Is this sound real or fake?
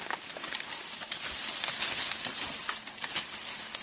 real